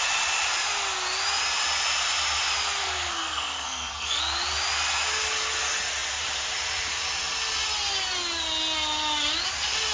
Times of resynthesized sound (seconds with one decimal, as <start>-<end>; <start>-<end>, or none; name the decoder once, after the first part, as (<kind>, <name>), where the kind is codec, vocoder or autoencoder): 2.8-4.2 (codec, SNAC)

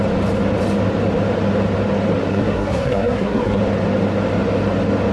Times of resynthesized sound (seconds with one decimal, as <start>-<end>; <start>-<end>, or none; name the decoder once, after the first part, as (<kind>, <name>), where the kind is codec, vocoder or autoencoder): 2.3-3.6 (codec, SNAC)

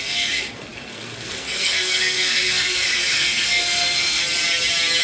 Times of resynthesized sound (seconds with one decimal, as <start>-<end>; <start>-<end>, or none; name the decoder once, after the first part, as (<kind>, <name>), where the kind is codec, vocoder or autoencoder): 0.0-4.2 (codec, SNAC)

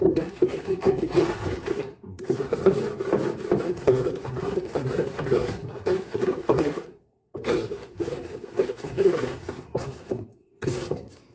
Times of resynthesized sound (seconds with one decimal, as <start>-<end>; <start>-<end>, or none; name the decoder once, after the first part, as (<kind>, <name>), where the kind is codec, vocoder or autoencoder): 0.0-2.8 (codec, SNAC); 3.6-11.3

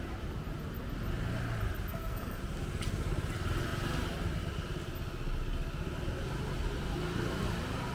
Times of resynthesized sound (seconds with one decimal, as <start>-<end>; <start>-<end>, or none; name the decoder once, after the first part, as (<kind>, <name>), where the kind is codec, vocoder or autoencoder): 1.9-2.4 (codec, SNAC)